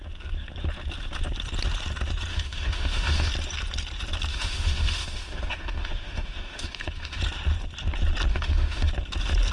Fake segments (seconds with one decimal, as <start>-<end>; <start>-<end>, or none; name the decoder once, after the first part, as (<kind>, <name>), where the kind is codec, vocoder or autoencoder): 2.3-3.3 (autoencoder, DAC-VAE); 4.3-7.2; 8.3-8.9